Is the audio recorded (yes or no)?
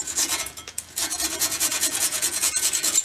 no